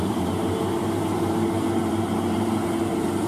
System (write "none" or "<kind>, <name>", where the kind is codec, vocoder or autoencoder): vocoder, BigVGAN v2